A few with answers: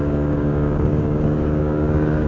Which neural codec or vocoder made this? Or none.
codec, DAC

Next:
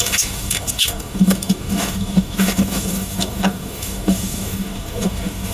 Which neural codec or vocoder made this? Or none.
codec, DAC